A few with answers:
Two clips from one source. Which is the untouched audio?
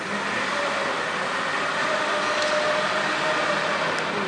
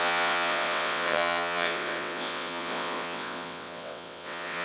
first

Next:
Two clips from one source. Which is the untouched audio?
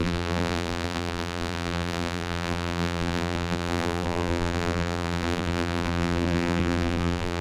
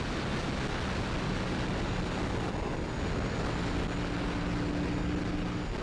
second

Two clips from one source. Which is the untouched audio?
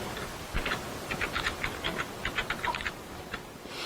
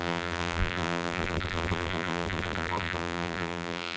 first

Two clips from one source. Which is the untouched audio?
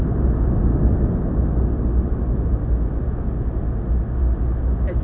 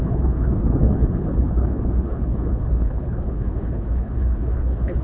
first